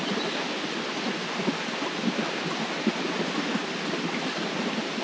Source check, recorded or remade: recorded